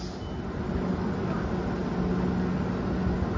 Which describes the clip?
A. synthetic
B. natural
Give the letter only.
B